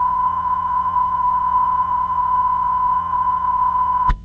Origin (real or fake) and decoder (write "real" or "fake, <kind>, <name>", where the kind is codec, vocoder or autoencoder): fake, vocoder, WaveNeXt